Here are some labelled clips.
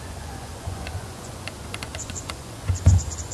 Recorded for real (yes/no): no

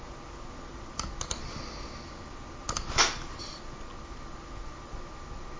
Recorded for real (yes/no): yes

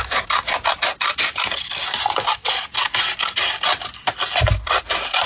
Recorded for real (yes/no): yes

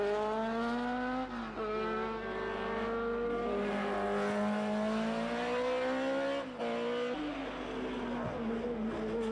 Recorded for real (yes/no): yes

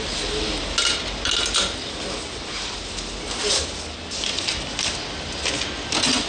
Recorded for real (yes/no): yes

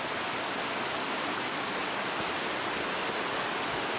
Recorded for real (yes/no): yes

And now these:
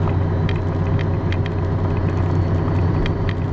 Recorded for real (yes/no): yes